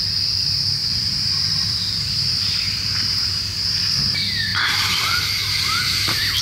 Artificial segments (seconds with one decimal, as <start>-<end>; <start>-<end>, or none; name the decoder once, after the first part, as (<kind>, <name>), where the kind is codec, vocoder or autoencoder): 0.8-4.0 (vocoder, BigVGAN v2); 4.5-6.4